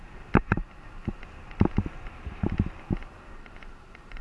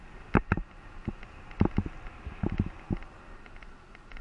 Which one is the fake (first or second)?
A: first